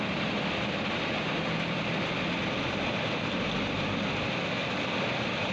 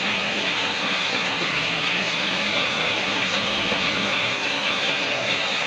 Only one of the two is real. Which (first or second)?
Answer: first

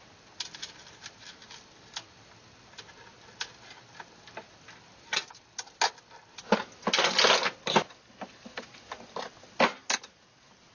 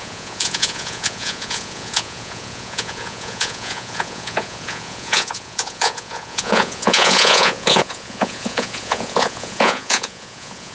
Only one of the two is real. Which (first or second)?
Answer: first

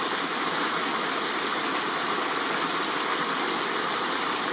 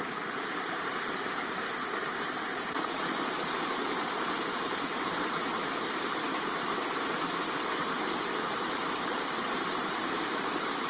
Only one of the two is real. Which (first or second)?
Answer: first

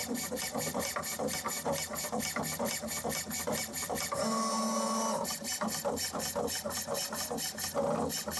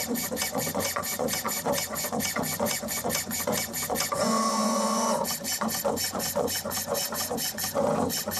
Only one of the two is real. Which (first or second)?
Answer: first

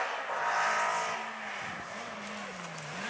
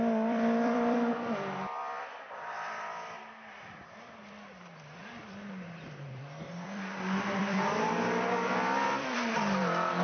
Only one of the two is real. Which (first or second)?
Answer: first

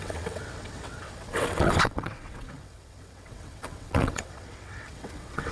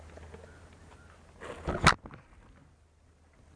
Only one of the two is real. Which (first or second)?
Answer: second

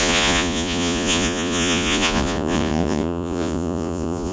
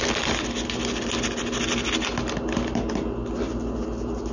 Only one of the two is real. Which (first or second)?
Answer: second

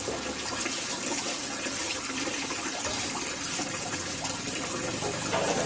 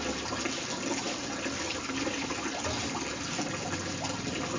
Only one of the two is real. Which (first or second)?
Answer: second